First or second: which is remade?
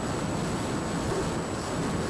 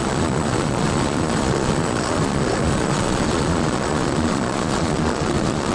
second